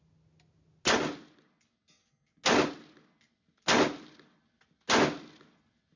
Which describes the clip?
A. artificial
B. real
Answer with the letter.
B